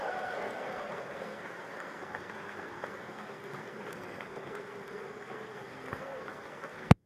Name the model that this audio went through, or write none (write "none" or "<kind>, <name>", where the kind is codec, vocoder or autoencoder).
codec, SNAC